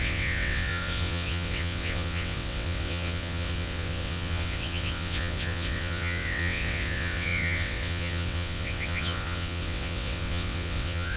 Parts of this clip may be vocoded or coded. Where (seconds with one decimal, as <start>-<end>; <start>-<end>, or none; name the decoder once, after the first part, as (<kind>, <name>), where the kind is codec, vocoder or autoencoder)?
0.0-11.2 (vocoder, WaveNeXt)